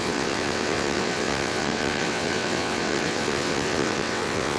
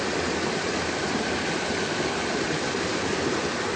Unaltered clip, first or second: second